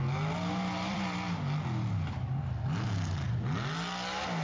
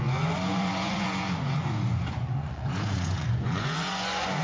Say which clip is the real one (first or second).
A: first